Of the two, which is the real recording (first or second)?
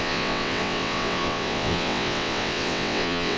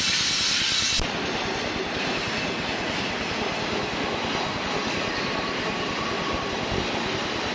second